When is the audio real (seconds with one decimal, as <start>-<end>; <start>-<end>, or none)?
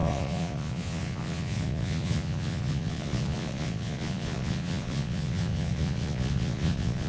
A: none